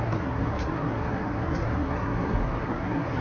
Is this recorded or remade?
remade